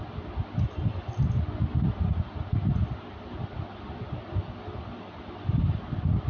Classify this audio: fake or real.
real